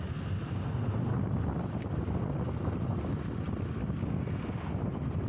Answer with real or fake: real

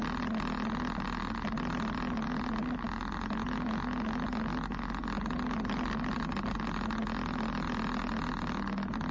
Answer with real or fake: real